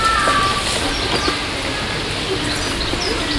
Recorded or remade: recorded